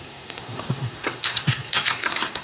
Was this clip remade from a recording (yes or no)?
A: yes